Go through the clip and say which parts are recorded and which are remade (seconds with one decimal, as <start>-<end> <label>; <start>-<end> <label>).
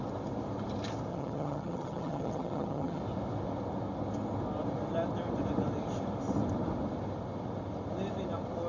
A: 0.0-1.1 recorded; 1.1-3.0 remade; 3.0-8.7 recorded